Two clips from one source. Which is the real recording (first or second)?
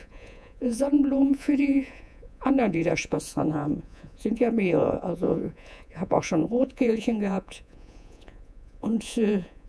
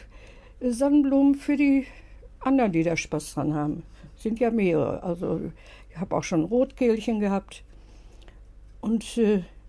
second